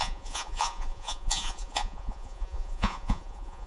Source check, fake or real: fake